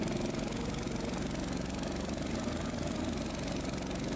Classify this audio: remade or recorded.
recorded